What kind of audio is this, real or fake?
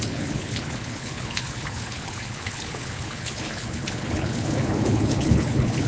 fake